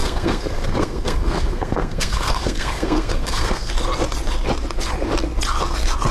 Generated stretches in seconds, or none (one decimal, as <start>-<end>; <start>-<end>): 0.0-3.7

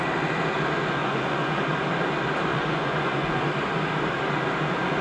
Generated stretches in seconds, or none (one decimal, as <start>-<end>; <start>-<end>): 1.0-1.6; 2.5-3.4

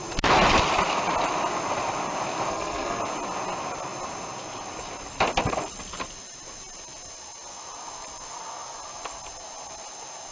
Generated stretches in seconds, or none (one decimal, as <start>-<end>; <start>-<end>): 2.5-3.0

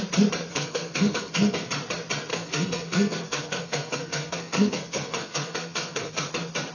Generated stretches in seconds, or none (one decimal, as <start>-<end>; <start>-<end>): 0.5-1.7; 2.3-6.3

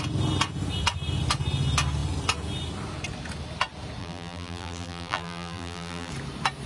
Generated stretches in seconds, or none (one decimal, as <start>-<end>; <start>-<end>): 4.0-6.1

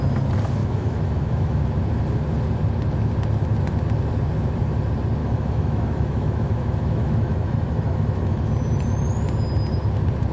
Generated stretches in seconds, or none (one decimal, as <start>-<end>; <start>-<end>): 0.6-1.6; 5.2-8.5

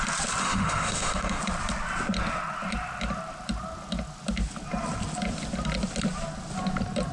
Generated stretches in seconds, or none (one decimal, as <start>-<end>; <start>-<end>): 0.4-1.4

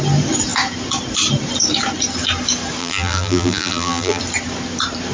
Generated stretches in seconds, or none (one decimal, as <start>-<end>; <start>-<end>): 2.8-4.2